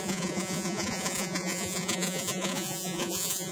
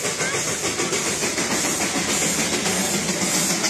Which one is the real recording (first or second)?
second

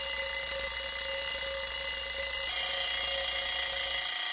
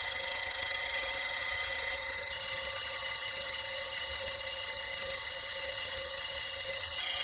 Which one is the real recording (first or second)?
first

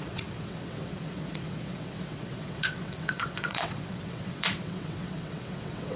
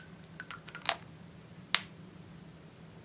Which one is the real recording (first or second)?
second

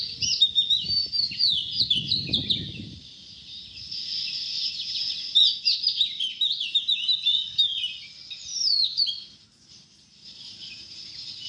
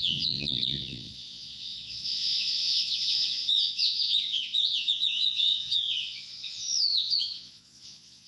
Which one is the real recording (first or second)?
first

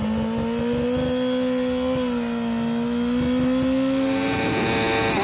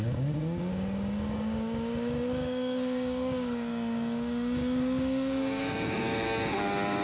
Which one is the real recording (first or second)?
first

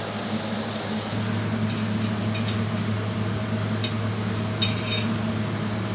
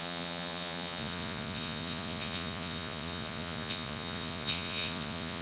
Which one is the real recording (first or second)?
first